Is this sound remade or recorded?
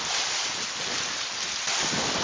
recorded